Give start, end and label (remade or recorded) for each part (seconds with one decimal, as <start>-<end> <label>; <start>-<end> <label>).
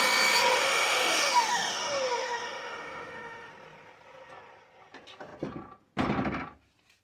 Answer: 0.0-0.5 recorded; 0.5-3.5 remade; 3.5-7.0 recorded